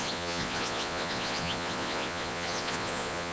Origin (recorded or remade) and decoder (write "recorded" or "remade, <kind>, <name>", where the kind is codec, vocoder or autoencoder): remade, vocoder, Vocos